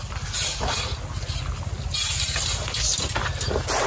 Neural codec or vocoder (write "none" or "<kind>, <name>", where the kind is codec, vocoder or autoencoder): none